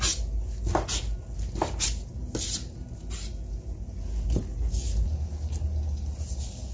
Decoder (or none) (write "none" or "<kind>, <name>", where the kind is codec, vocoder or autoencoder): none